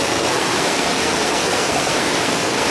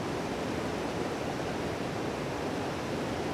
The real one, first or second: second